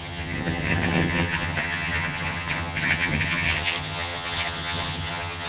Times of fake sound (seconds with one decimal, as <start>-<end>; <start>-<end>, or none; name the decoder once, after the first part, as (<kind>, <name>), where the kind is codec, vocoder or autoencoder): 0.0-5.5 (vocoder, HiFi-GAN)